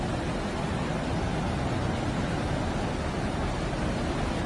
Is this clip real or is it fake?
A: real